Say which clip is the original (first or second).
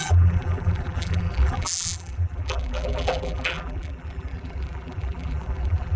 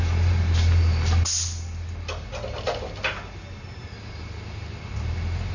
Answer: second